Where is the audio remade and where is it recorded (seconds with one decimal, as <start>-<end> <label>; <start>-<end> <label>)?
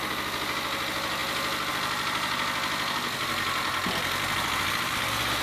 0.0-5.4 recorded